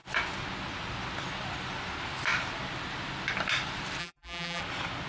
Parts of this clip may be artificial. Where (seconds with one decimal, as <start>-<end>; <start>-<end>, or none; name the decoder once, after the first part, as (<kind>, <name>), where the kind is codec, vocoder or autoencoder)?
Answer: 4.0-4.6 (vocoder, BigVGAN v2)